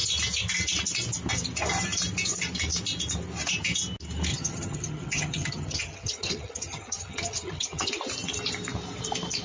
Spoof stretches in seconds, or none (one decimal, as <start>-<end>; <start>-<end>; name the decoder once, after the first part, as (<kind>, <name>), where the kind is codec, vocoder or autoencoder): 4.3-7.9 (vocoder, HiFi-GAN)